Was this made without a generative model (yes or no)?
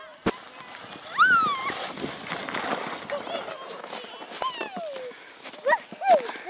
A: yes